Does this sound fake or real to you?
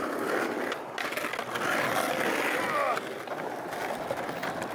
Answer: real